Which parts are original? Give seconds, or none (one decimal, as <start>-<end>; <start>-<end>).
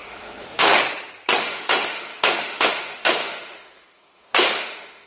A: 0.7-1.4